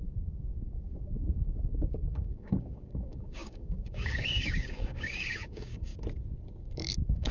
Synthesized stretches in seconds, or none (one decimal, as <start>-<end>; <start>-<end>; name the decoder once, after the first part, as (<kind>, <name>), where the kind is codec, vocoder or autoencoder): 0.0-5.9 (codec, DAC); 6.6-7.3